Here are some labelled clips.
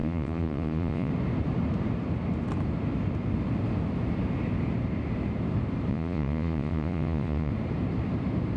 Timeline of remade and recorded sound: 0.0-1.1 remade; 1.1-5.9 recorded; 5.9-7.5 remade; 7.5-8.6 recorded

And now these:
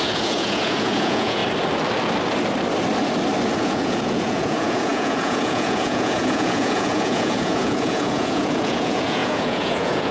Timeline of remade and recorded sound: 0.0-1.4 remade; 1.4-3.6 recorded; 3.6-10.1 remade

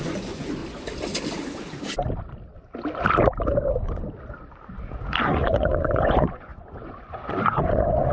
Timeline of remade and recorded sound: 0.0-0.6 remade; 0.6-5.2 recorded; 5.2-8.1 remade

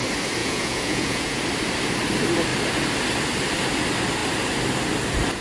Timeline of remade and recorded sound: 0.0-0.4 recorded; 0.4-1.4 remade; 1.4-5.4 recorded

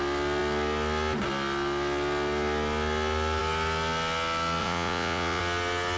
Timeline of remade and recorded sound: 0.0-4.6 recorded; 4.6-5.4 remade; 5.4-6.0 recorded

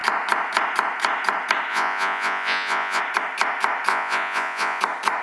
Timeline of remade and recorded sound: 0.0-1.7 recorded; 1.7-3.0 remade; 3.0-3.9 recorded; 3.9-4.8 remade; 4.8-5.2 recorded

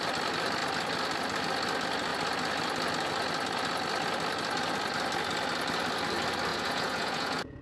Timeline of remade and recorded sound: 0.0-6.5 recorded; 6.5-7.6 remade